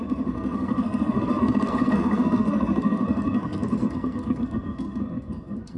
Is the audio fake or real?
fake